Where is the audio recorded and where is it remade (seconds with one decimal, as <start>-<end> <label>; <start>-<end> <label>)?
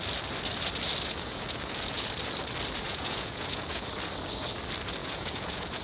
0.0-1.1 recorded; 1.1-2.1 remade; 2.1-2.8 recorded; 2.8-3.9 remade; 3.9-5.0 recorded; 5.0-5.8 remade